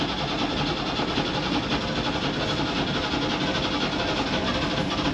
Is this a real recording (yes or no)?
yes